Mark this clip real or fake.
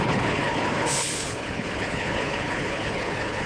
fake